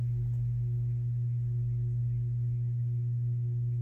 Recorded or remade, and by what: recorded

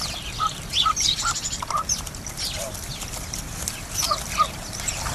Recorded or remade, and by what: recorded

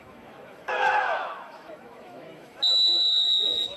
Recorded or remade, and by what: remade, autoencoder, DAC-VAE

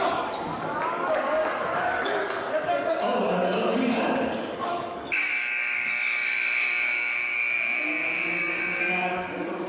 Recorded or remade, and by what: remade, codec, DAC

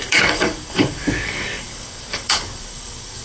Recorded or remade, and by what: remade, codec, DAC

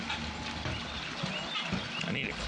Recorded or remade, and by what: recorded